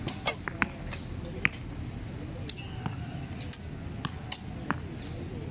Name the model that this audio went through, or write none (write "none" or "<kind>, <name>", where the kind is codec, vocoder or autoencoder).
none